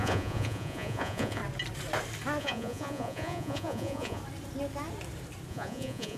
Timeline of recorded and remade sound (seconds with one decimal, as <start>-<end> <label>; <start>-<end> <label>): 0.0-1.4 remade; 1.4-2.4 recorded; 2.4-4.2 remade; 4.2-5.5 recorded; 5.5-6.2 remade